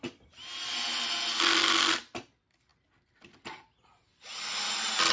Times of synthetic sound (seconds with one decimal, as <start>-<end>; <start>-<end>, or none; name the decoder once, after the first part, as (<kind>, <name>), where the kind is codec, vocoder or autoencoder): none